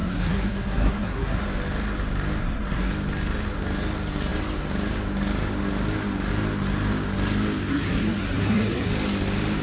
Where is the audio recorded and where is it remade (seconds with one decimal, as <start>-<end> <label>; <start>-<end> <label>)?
0.0-1.4 remade; 1.4-2.4 recorded; 2.4-2.9 remade; 2.9-7.7 recorded; 7.7-8.9 remade; 8.9-9.6 recorded